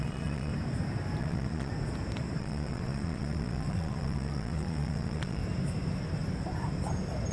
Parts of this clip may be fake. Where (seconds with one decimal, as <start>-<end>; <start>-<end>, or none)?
0.0-0.5; 1.2-1.7; 2.4-5.4